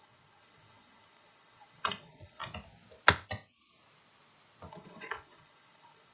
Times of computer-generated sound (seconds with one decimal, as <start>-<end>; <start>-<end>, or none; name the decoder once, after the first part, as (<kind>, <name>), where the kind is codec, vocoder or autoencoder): 0.0-2.4 (vocoder, Vocos); 4.7-6.1